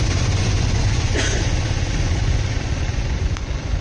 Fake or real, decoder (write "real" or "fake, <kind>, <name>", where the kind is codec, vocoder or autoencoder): fake, vocoder, Vocos